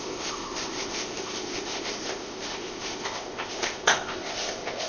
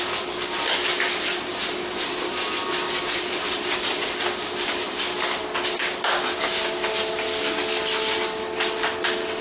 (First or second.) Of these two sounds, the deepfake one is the first